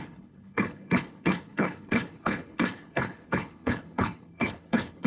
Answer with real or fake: fake